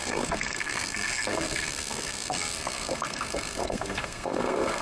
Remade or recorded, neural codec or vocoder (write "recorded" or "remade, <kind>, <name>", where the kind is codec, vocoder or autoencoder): remade, codec, SNAC